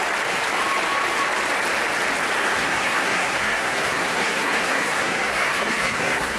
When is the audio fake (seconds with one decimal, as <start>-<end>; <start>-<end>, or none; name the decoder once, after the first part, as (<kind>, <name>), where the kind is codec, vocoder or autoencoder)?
2.4-6.4 (codec, SNAC)